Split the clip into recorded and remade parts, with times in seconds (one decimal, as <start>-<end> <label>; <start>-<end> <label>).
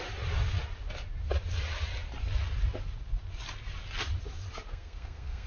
0.0-4.7 recorded; 4.7-5.5 remade